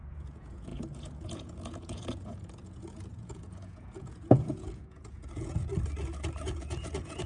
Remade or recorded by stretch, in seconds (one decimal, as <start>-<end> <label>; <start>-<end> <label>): 0.0-5.7 remade; 5.7-6.4 recorded; 6.4-7.3 remade

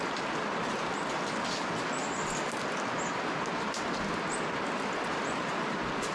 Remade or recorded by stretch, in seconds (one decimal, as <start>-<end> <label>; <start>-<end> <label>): 0.0-6.1 recorded

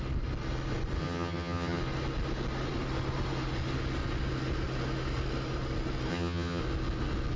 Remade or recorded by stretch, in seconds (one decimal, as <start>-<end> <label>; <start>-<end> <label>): 0.0-1.0 recorded; 1.0-1.8 remade; 1.8-6.1 recorded; 6.1-6.6 remade; 6.6-7.4 recorded

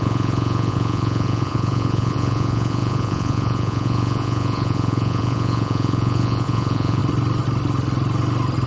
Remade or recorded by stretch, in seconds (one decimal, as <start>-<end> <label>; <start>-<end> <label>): 0.0-7.0 remade; 7.0-8.7 recorded